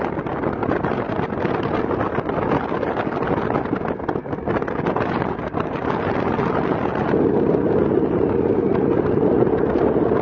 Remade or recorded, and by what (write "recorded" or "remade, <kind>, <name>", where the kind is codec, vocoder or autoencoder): recorded